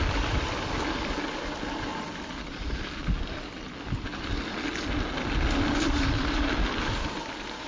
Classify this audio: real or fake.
real